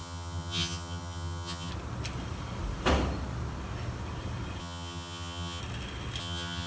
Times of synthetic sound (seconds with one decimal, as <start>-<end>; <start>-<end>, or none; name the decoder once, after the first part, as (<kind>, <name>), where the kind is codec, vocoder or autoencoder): 0.0-1.7 (vocoder, HiFi-GAN); 4.6-5.6; 6.2-6.7